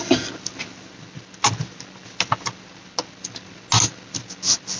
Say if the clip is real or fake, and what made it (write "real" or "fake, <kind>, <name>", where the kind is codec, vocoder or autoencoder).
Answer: real